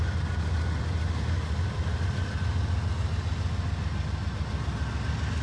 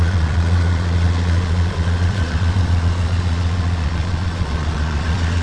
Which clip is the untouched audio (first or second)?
first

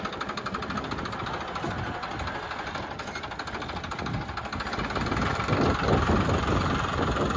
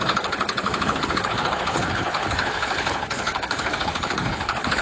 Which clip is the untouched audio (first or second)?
first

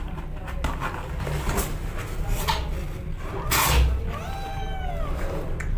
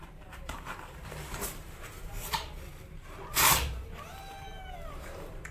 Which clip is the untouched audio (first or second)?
first